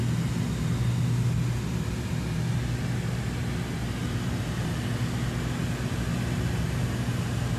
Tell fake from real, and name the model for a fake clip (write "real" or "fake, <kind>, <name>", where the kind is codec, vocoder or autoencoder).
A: real